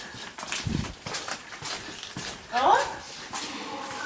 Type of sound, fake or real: real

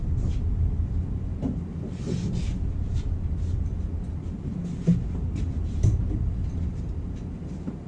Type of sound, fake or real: real